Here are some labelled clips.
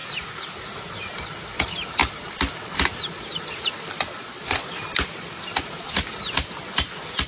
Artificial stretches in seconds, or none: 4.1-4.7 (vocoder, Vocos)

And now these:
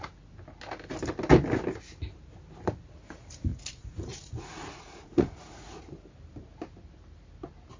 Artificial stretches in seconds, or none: 3.5-5.8 (vocoder, Vocos)

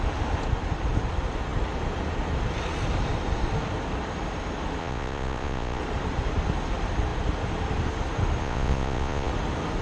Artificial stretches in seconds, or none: 4.8-5.8 (vocoder, Vocos); 8.4-9.3

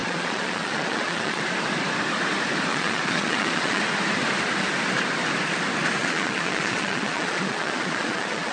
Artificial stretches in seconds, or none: 0.0-1.4 (vocoder, Vocos); 2.7-3.8; 6.0-8.5